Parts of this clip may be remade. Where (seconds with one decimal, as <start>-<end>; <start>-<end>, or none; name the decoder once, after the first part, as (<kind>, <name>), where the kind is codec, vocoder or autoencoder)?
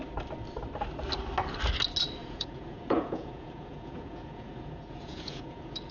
2.2-5.9 (vocoder, Vocos)